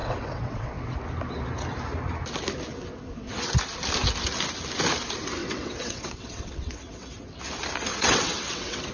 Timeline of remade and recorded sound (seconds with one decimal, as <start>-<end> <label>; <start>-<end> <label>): 0.0-0.9 remade; 0.9-2.7 recorded; 2.7-3.5 remade; 3.5-5.4 recorded; 5.4-7.4 remade; 7.4-7.9 recorded; 7.9-8.9 remade